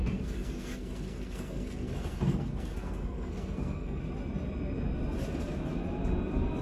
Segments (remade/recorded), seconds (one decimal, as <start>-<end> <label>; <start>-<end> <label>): 0.0-4.0 remade; 4.0-6.6 recorded